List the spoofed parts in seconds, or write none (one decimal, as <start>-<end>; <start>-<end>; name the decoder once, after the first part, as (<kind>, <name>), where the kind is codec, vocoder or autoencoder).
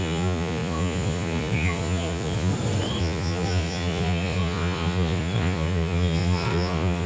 0.0-2.5 (vocoder, Vocos); 3.0-7.1